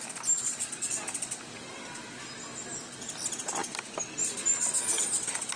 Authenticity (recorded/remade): recorded